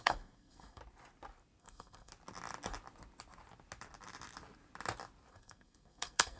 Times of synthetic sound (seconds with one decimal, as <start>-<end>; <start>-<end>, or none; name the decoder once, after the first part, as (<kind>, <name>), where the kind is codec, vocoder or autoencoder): 0.0-0.8 (codec, SNAC); 1.6-2.1; 5.3-6.4